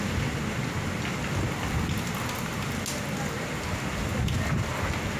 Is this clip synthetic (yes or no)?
no